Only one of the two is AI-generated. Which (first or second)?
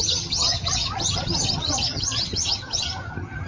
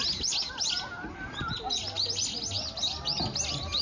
first